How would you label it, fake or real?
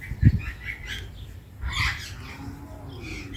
real